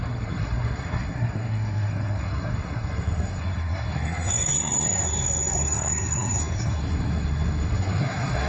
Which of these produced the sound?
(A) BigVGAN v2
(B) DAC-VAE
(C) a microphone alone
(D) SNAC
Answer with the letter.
D